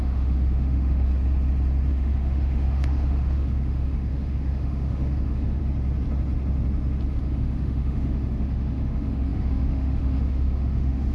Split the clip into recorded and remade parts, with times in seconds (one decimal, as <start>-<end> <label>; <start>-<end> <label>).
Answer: 0.0-1.1 remade; 1.1-1.9 recorded; 1.9-5.6 remade; 5.6-7.2 recorded; 7.2-11.1 remade